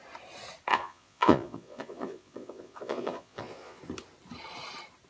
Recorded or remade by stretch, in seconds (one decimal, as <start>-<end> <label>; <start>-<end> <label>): 0.0-0.7 recorded; 0.7-3.8 remade; 3.8-5.1 recorded